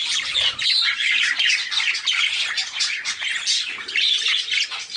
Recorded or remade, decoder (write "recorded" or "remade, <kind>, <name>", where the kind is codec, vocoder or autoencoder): recorded